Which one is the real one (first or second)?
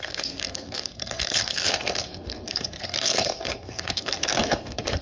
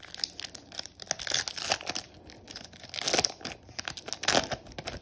second